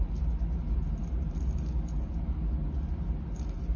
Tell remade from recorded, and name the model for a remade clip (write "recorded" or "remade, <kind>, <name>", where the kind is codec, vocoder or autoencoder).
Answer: recorded